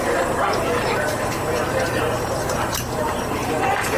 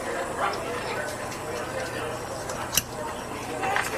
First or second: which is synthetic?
first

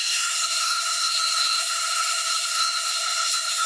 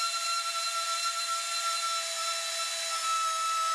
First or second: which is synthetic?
first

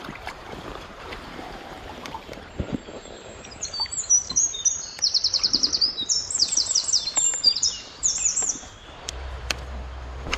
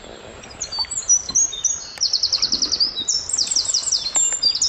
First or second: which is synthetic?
first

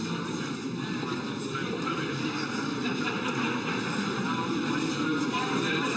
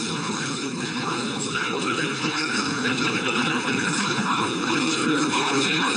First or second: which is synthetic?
second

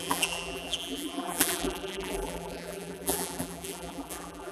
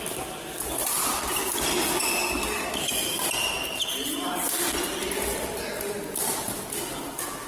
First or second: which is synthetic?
first